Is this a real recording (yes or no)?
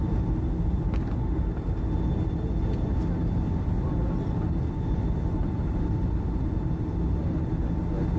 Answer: yes